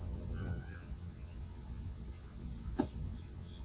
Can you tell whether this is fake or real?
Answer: fake